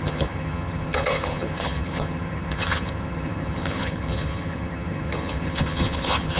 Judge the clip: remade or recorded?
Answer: remade